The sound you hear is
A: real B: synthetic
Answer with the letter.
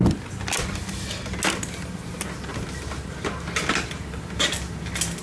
A